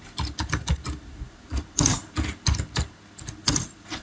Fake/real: real